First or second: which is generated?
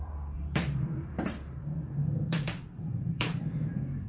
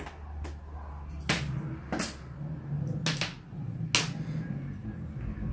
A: first